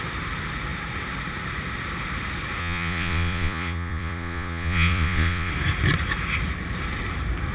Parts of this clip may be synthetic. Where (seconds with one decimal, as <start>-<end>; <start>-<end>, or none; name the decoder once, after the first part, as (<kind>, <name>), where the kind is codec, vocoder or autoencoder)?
2.6-5.5 (vocoder, Vocos)